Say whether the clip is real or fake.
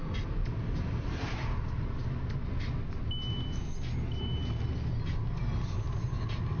real